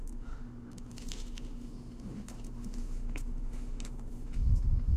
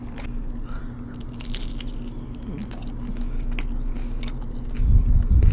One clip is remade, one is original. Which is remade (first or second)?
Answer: first